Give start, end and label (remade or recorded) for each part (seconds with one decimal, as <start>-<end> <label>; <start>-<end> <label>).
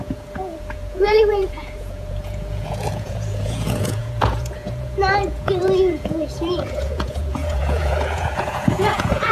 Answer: 0.0-9.3 remade